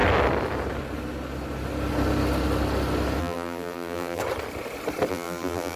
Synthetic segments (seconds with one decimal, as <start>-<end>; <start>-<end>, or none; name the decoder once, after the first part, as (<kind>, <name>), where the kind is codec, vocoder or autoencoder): 3.2-4.2 (vocoder, BigVGAN v2); 5.1-5.8